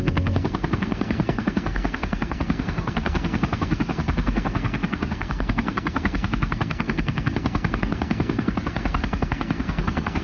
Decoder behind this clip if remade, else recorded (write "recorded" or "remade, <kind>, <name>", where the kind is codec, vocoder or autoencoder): remade, codec, SNAC